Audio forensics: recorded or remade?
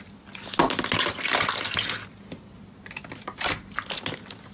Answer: recorded